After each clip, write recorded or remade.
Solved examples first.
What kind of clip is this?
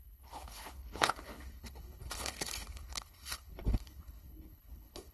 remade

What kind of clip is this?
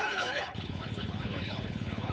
remade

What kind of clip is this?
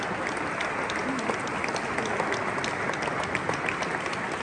recorded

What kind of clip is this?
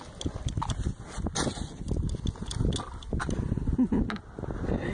recorded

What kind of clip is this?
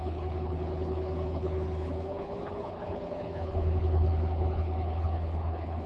remade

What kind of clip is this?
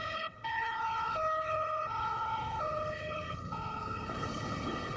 remade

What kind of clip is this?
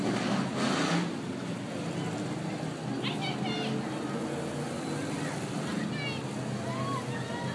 recorded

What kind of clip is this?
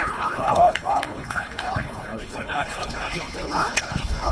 remade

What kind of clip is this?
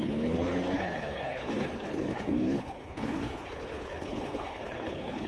remade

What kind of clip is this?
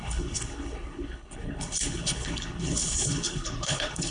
remade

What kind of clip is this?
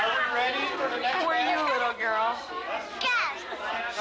recorded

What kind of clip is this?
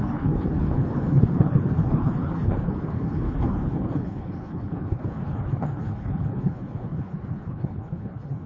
remade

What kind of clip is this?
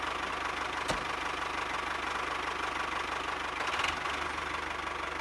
recorded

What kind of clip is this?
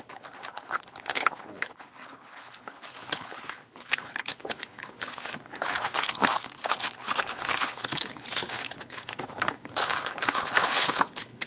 remade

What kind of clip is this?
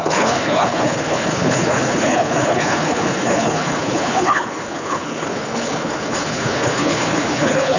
remade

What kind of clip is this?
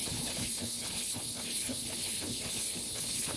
remade